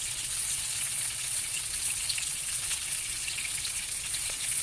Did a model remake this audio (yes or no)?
yes